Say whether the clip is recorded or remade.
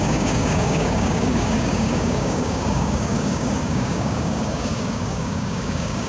remade